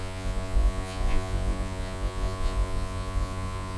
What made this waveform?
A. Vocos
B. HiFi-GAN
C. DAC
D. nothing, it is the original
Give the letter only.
A